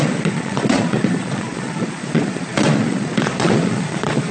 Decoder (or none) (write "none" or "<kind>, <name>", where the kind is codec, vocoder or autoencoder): vocoder, Vocos